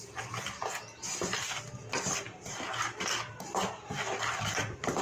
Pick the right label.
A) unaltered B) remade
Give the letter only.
A